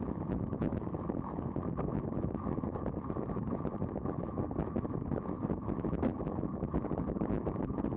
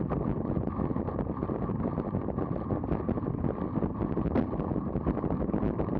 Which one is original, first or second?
second